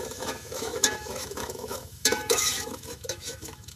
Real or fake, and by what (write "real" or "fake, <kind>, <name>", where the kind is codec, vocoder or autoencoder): fake, autoencoder, DAC-VAE